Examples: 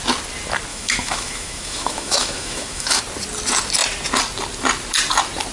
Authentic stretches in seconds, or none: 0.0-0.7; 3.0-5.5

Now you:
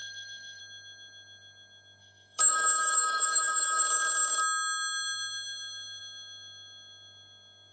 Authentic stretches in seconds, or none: 0.6-2.0; 3.8-7.7

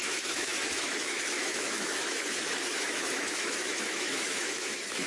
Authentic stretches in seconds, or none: none

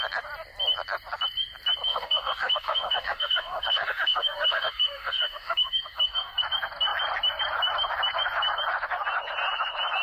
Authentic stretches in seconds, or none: 0.0-1.9; 6.4-10.0

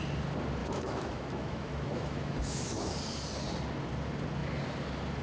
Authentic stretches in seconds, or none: 0.0-0.6; 2.9-5.2

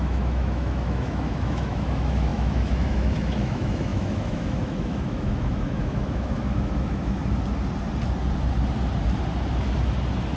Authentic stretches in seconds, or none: 7.2-10.4

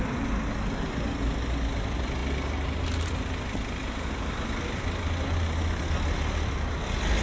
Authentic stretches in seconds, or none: 0.0-7.2